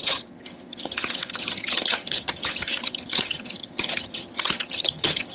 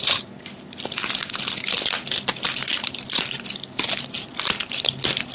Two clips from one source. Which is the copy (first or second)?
first